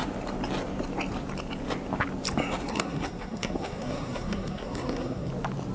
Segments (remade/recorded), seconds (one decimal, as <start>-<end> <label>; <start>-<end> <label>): 0.0-2.7 recorded; 2.7-5.3 remade; 5.3-5.7 recorded